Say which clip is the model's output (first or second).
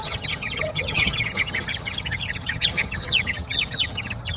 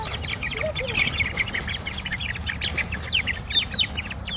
first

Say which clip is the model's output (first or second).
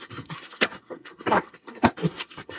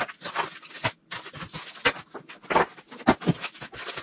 first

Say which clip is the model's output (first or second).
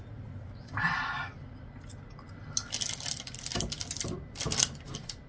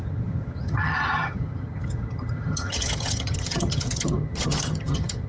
second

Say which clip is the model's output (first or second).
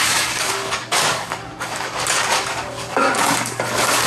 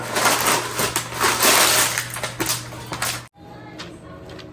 first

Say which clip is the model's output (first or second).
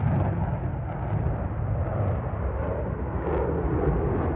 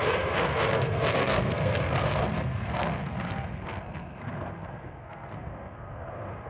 second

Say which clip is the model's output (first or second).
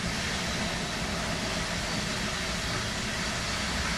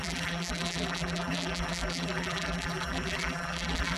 second